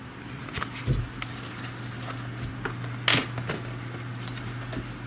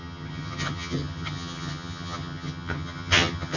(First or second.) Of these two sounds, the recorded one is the first